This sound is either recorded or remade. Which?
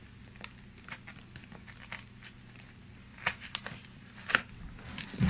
recorded